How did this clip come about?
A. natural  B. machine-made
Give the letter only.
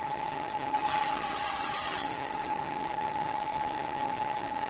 B